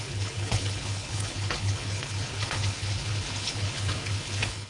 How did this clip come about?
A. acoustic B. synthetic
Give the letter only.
B